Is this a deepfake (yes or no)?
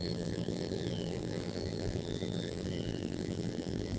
yes